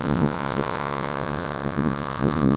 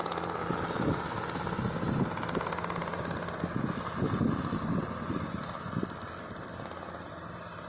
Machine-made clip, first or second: first